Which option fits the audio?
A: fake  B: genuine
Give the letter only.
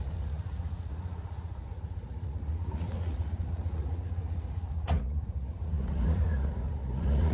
A